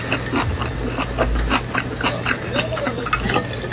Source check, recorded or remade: recorded